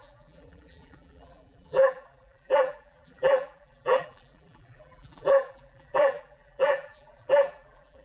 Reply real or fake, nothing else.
fake